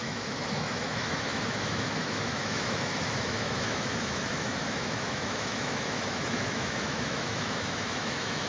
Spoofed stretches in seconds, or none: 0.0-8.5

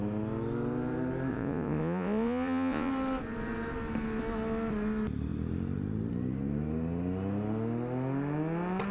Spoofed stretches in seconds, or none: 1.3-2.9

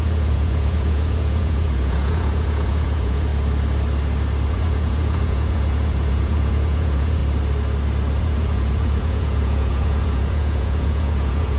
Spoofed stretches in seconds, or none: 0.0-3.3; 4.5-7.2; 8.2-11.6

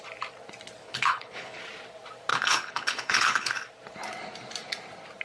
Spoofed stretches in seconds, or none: 0.8-1.6; 2.3-3.5